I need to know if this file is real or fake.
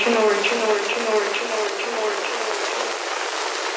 real